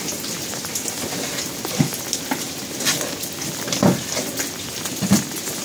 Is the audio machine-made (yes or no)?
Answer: no